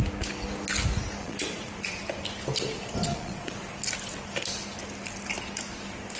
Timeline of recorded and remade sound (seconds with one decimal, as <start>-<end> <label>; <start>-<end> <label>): 0.0-1.2 recorded; 1.2-2.0 remade; 2.0-3.1 recorded; 3.1-3.7 remade; 3.7-6.2 recorded